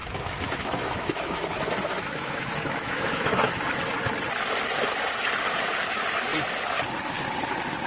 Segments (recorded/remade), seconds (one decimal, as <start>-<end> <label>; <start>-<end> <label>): 0.0-3.5 remade; 3.5-7.9 recorded